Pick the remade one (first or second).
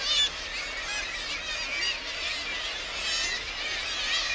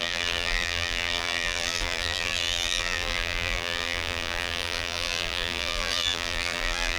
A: second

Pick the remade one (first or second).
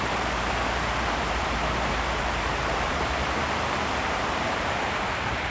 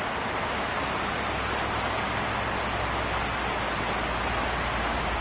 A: first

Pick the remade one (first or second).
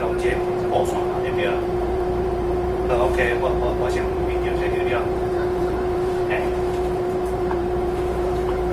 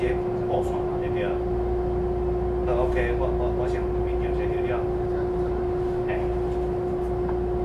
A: first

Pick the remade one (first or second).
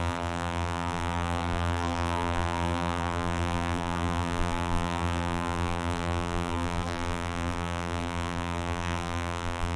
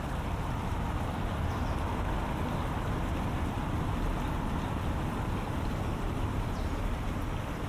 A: first